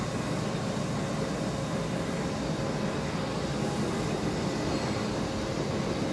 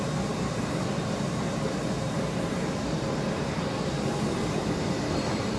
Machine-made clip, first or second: second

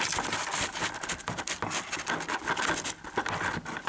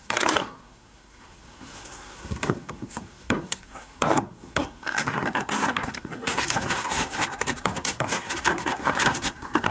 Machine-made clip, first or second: second